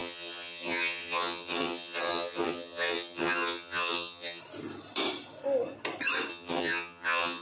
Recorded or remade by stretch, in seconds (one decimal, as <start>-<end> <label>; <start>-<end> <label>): 0.0-4.4 remade; 4.4-6.3 recorded; 6.3-7.4 remade